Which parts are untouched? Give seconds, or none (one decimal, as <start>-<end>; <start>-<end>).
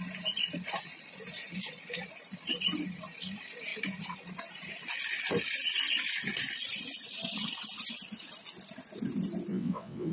0.0-9.5